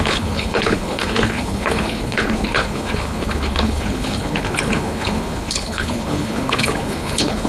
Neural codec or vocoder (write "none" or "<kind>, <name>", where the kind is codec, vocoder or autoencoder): codec, HILCodec